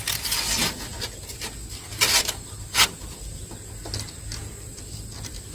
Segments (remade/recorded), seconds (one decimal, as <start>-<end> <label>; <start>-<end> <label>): 0.0-5.5 recorded